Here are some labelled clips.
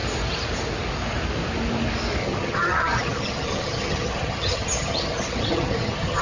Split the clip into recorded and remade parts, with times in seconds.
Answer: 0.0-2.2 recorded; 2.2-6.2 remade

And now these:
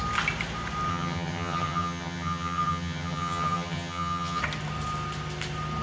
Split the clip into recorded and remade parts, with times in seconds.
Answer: 0.0-0.9 recorded; 0.9-4.4 remade; 4.4-5.8 recorded

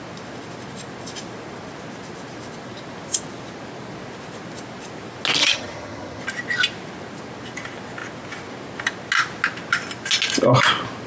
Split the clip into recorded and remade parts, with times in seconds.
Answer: 0.0-5.4 recorded; 5.4-6.2 remade; 6.2-11.1 recorded

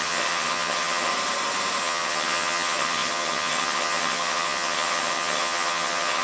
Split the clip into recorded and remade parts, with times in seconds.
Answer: 0.0-1.1 remade; 1.1-1.8 recorded; 1.8-6.2 remade

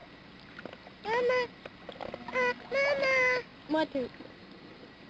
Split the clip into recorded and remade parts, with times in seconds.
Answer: 0.0-5.1 recorded